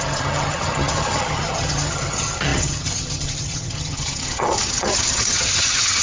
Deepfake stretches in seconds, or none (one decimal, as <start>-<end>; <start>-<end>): 0.0-6.0